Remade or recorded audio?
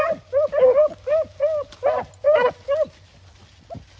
recorded